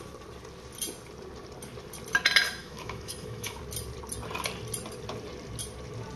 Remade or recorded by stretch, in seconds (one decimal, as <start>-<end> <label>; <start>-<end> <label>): 0.0-2.6 recorded; 2.6-3.6 remade; 3.6-6.2 recorded